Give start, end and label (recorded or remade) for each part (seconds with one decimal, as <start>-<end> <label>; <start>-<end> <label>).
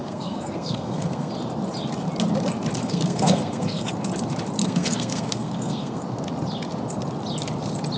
0.0-1.3 remade; 1.3-2.8 recorded; 2.8-3.9 remade; 3.9-4.6 recorded; 4.6-6.0 remade; 6.0-8.0 recorded